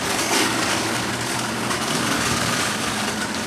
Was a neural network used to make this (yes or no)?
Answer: yes